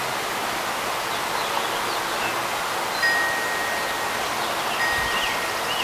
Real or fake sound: real